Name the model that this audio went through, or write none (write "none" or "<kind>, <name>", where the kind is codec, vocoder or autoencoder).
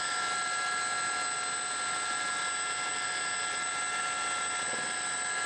none